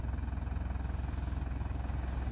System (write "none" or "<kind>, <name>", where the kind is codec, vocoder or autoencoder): none